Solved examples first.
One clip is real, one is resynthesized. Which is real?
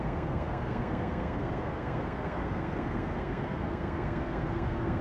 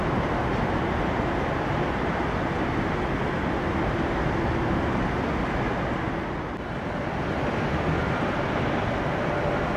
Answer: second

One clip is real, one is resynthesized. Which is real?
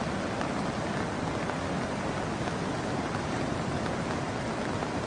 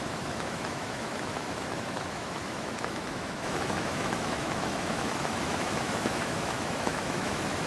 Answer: first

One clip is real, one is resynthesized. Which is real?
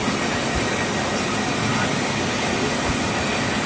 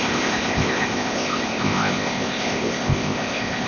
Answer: first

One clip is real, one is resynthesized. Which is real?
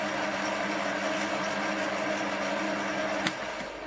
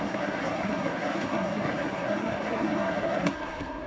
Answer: first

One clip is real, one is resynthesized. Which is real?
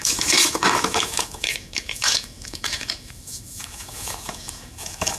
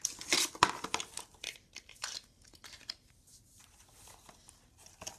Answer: second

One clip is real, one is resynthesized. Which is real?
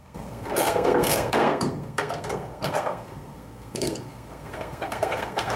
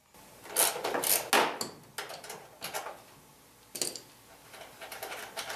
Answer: second